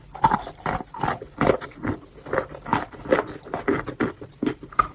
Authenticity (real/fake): real